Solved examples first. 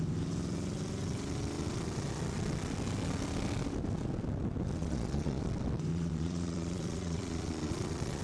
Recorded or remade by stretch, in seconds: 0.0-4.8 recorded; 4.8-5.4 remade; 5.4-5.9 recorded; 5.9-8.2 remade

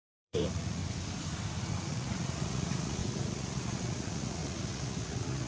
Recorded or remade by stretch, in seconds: 0.0-0.8 remade; 0.8-1.8 recorded; 1.8-5.5 remade

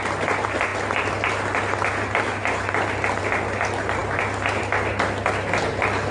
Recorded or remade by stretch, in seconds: 0.0-6.1 recorded